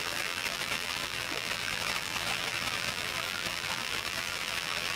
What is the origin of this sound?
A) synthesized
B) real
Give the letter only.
A